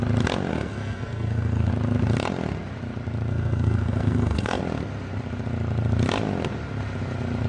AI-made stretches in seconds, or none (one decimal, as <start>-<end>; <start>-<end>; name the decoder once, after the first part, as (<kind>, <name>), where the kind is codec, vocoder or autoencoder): 0.5-1.7 (codec, SNAC); 3.3-4.6